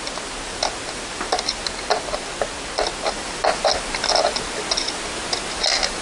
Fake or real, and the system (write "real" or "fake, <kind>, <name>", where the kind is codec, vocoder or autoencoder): real